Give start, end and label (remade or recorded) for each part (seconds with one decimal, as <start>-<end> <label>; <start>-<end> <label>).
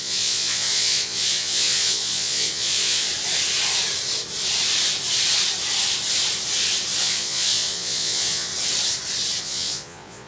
0.0-3.1 remade; 3.1-7.0 recorded; 7.0-8.5 remade; 8.5-9.4 recorded; 9.4-10.3 remade